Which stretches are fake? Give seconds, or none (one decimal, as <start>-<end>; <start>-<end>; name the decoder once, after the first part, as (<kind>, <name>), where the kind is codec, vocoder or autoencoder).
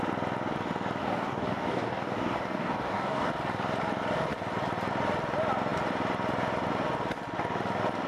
1.0-3.3 (codec, DAC)